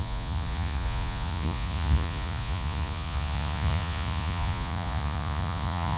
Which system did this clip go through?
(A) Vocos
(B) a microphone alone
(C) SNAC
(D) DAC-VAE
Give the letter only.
A